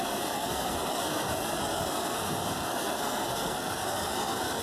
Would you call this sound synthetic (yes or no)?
yes